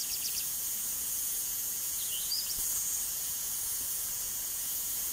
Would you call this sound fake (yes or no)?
yes